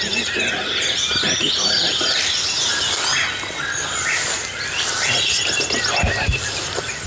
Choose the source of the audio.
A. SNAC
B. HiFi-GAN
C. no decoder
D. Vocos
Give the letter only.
C